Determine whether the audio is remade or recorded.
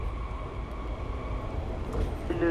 recorded